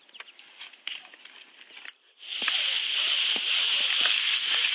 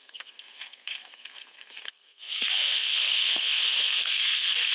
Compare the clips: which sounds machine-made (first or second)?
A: second